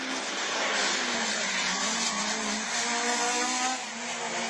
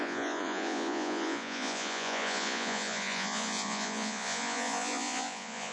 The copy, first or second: second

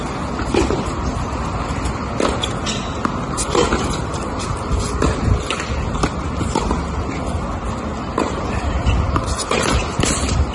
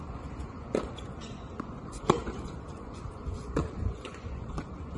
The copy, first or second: second